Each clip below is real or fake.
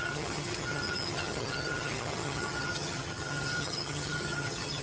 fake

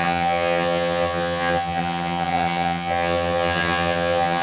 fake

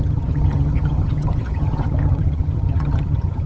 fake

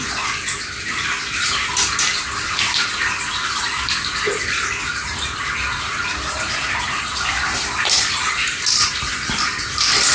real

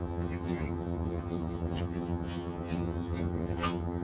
fake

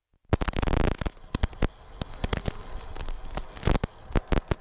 real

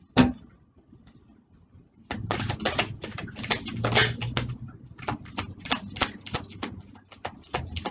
real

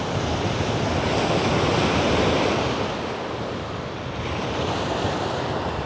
real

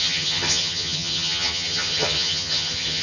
fake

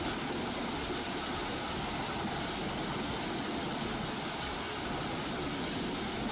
real